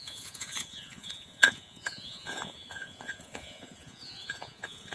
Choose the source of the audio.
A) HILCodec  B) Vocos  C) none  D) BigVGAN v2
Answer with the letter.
B